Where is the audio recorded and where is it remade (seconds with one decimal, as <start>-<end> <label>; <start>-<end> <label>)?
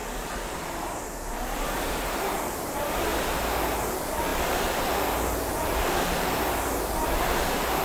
0.0-3.1 remade; 3.1-3.8 recorded; 3.8-7.8 remade